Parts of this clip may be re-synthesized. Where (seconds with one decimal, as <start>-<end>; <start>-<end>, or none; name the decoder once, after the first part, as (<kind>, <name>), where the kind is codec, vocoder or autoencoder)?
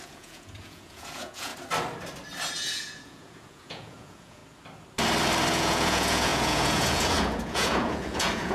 0.0-1.5 (vocoder, Vocos); 2.5-4.4; 5.5-8.5